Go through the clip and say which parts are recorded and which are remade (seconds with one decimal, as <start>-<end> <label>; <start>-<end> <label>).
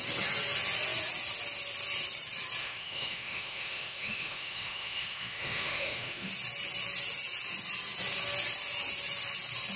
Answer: 0.0-2.6 recorded; 2.6-6.3 remade; 6.3-9.8 recorded